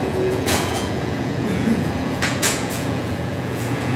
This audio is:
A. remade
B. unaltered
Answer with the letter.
A